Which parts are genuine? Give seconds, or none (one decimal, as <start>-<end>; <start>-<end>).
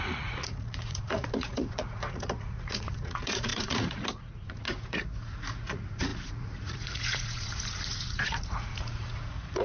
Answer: none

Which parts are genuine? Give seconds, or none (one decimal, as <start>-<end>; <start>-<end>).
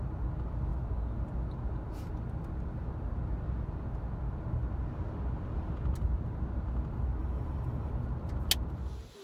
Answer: 0.0-7.2; 7.9-9.2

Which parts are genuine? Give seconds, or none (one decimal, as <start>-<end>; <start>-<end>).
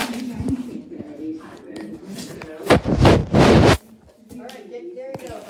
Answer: 1.0-3.2; 3.7-5.5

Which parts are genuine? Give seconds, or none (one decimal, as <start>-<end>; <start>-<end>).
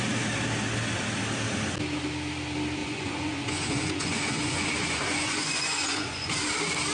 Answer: 0.0-2.8; 6.4-6.9